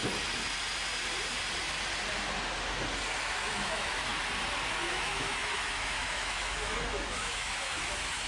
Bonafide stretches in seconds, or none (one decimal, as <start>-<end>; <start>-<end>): 0.0-3.2; 4.1-4.7